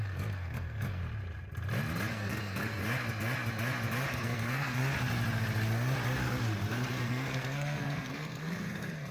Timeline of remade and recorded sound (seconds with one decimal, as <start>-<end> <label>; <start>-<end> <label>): 0.0-1.0 remade; 1.0-2.1 recorded; 2.1-2.8 remade; 2.8-4.1 recorded; 4.1-4.8 remade; 4.8-6.9 recorded; 6.9-9.1 remade